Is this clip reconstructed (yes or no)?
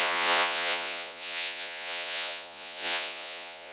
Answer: yes